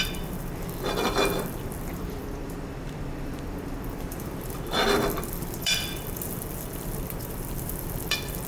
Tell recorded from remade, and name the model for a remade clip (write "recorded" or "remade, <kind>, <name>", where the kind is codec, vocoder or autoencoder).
remade, vocoder, BigVGAN v2